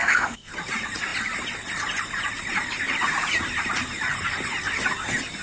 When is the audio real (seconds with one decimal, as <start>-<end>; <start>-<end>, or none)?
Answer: 0.5-5.4